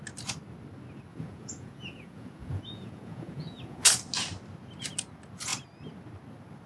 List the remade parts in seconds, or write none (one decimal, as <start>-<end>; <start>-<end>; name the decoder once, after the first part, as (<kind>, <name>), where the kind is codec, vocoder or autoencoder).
1.1-3.8 (vocoder, Vocos)